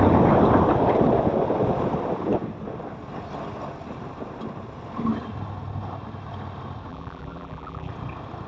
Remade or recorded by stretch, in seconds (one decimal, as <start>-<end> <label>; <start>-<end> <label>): 0.0-6.9 recorded; 6.9-7.9 remade; 7.9-8.5 recorded